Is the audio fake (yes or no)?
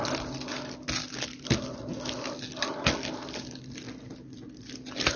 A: no